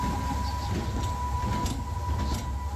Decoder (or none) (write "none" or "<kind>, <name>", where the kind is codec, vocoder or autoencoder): none